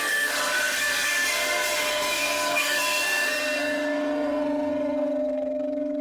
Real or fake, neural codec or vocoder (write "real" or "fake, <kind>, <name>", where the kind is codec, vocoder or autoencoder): fake, codec, SNAC